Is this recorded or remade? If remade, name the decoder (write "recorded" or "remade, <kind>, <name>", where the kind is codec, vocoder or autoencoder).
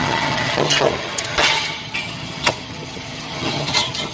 remade, vocoder, HiFi-GAN